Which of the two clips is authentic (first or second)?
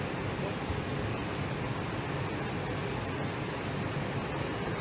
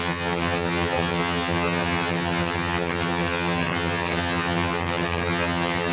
first